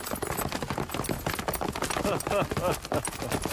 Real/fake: real